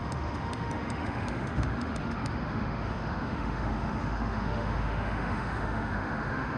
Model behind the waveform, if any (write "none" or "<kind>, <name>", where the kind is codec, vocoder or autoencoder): autoencoder, DAC-VAE